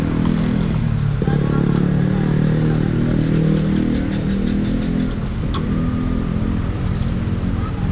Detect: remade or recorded recorded